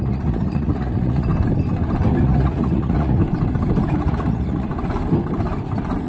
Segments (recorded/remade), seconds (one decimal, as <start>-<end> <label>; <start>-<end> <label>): 0.0-1.3 remade; 1.3-2.2 recorded; 2.2-3.2 remade; 3.2-3.9 recorded; 3.9-4.7 remade; 4.7-6.1 recorded